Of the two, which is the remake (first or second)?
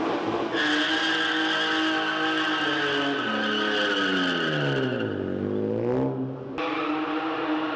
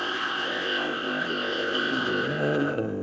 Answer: second